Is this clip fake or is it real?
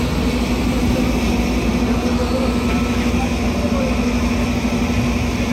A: real